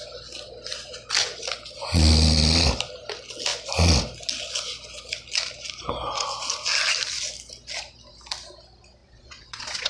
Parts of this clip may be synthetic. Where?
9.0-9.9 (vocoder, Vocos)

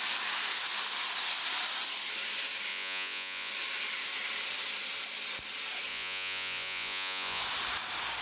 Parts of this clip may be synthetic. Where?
2.7-3.5 (vocoder, Vocos); 5.9-7.4

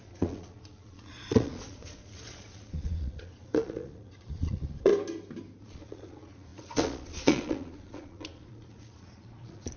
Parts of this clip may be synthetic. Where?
0.0-4.9 (vocoder, Vocos); 5.6-9.8

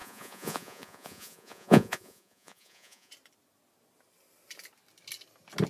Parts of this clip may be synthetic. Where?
0.0-3.1 (vocoder, Vocos)

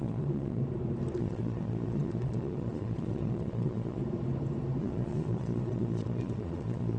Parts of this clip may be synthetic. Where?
0.0-0.6 (vocoder, Vocos); 1.2-4.0; 4.8-7.0